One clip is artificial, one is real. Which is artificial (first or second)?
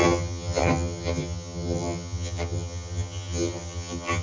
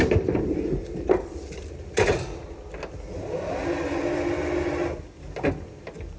first